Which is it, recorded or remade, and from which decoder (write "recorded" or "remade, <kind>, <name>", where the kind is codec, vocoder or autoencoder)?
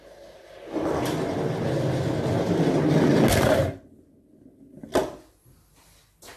recorded